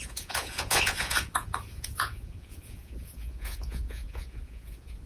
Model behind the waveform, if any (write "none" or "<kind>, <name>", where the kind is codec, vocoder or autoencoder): vocoder, Vocos